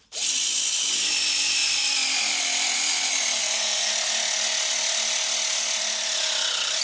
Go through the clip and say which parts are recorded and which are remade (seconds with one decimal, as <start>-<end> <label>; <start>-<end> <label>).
0.0-3.4 recorded; 3.4-3.9 remade; 3.9-6.8 recorded